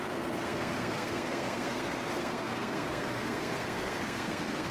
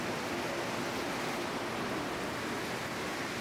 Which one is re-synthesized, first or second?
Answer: first